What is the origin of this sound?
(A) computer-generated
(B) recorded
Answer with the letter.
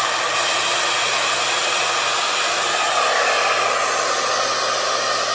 B